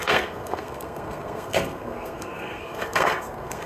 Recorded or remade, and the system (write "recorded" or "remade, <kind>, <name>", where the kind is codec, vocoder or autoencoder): remade, codec, SNAC